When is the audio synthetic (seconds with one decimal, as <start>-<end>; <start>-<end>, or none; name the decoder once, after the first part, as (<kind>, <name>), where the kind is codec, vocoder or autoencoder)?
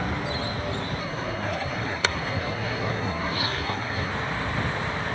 1.0-4.1 (codec, SNAC)